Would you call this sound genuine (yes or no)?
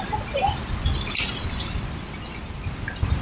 yes